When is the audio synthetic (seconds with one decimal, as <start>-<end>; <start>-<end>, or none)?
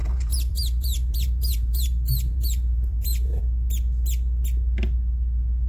0.0-3.4